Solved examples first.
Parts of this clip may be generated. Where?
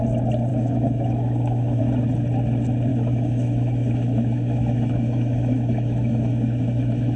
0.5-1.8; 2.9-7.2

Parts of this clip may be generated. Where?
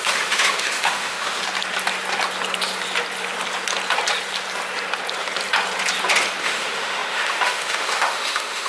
0.0-1.4; 6.4-8.7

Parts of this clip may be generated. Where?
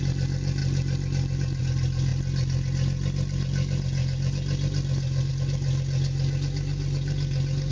none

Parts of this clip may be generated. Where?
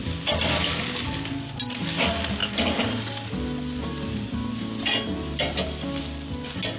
none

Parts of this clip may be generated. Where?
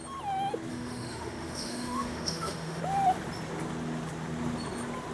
0.7-2.8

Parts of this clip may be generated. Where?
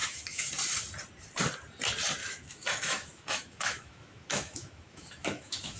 0.0-0.5; 2.2-5.8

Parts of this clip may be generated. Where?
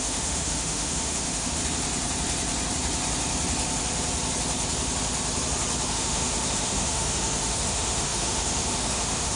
0.0-1.6; 5.9-9.4